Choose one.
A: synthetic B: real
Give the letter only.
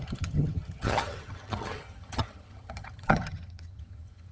A